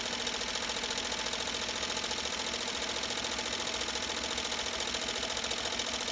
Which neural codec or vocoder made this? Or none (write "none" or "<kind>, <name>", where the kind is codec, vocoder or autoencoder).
none